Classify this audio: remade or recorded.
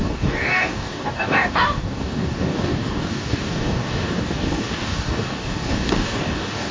remade